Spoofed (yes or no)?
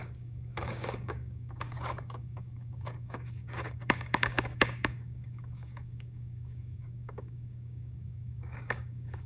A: yes